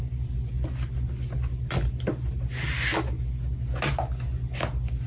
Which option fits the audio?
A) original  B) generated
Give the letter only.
A